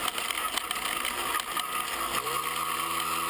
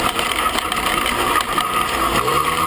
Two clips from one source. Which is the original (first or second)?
first